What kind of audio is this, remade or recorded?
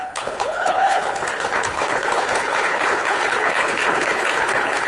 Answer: remade